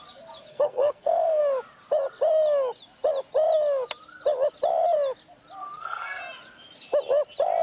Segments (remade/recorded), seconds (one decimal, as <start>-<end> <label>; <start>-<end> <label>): 0.0-0.5 recorded; 0.5-1.4 remade; 1.4-5.6 recorded; 5.6-6.2 remade; 6.2-7.6 recorded